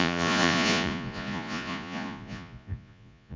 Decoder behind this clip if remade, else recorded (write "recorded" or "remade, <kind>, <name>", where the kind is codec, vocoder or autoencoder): remade, vocoder, Vocos